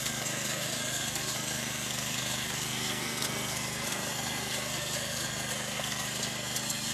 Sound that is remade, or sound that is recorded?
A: remade